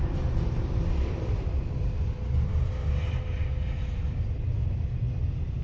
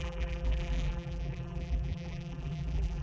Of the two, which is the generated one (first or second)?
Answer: second